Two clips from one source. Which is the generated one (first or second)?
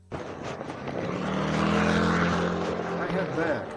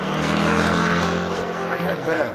second